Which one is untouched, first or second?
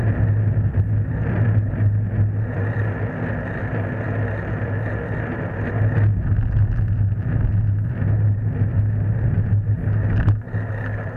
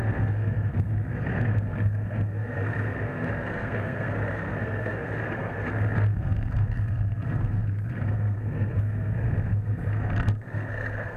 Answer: first